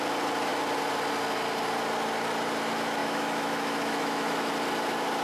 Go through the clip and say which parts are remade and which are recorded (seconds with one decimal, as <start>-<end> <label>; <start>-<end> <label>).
0.0-3.0 recorded; 3.0-4.5 remade; 4.5-5.2 recorded